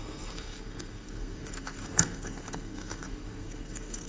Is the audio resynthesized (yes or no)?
yes